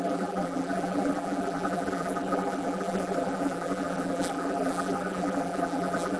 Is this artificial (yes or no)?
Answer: yes